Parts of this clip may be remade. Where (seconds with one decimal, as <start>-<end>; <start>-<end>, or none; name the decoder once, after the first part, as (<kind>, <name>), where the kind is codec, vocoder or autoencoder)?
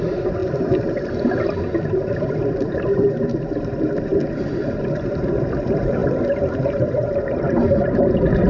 0.0-0.4 (vocoder, BigVGAN v2); 1.6-6.0; 6.5-8.5